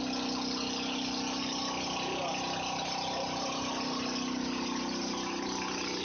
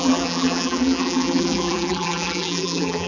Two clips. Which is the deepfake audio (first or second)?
second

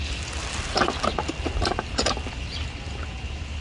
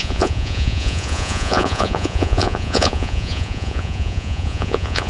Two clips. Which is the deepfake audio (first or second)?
second